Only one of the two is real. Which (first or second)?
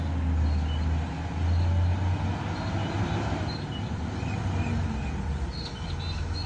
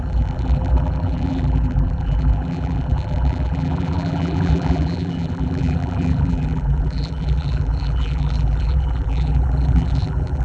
first